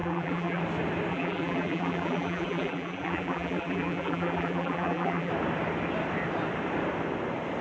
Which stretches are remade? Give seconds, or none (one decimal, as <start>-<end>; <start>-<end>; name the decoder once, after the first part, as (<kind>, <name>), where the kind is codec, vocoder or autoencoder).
0.0-0.6 (vocoder, BigVGAN v2); 1.1-5.3

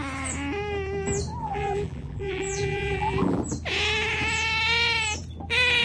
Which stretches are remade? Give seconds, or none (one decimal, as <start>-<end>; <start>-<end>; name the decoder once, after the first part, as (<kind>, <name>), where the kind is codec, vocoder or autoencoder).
1.4-3.4 (vocoder, BigVGAN v2)

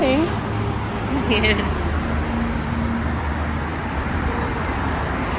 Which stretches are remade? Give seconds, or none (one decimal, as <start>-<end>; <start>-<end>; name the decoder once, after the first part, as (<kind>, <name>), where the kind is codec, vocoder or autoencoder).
3.7-5.4 (vocoder, BigVGAN v2)